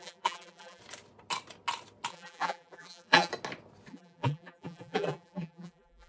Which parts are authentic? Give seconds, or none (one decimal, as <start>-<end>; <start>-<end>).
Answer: 0.8-2.1; 3.3-3.9